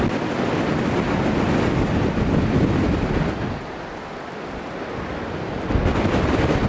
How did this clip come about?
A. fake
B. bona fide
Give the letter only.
B